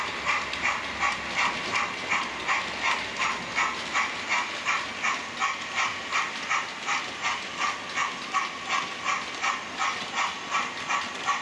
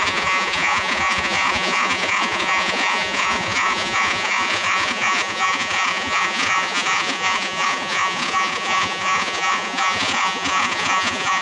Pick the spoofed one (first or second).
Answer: second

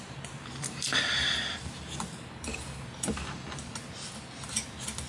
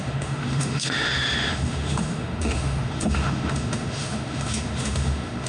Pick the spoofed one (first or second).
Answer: second